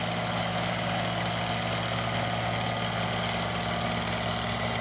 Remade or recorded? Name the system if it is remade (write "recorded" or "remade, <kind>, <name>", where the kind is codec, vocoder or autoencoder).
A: recorded